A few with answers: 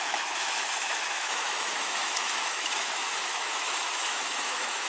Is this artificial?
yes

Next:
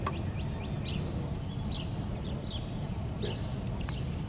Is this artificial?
no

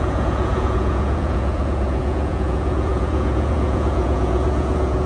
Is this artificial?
yes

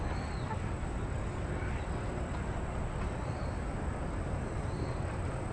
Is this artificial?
no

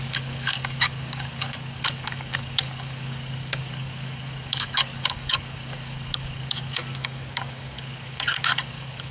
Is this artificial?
yes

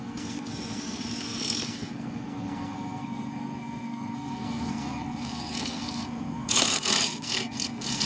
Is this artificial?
yes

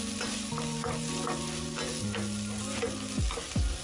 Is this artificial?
no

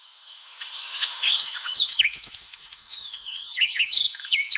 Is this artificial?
yes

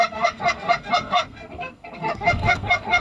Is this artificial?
yes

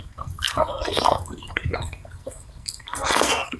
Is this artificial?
yes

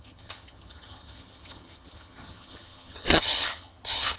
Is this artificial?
yes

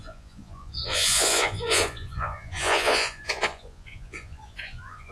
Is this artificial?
yes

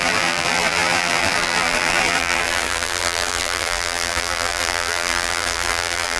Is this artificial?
yes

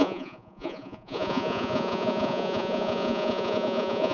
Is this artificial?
yes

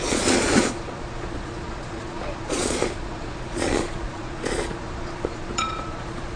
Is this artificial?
yes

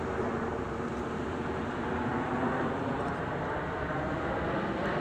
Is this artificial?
no